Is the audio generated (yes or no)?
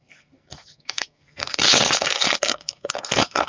yes